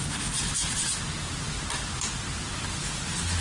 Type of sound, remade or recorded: recorded